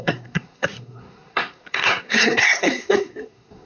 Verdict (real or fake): fake